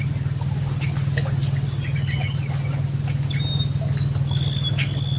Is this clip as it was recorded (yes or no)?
yes